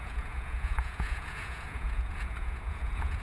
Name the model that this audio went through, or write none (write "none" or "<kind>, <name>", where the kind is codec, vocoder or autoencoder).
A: vocoder, Vocos